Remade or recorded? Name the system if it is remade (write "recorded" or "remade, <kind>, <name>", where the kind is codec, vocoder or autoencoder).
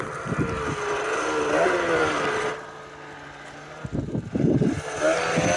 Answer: recorded